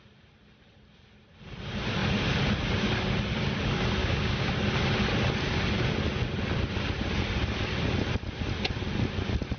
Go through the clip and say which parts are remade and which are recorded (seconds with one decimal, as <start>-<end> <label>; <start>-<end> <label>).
0.0-4.0 recorded; 4.0-4.5 remade; 4.5-9.6 recorded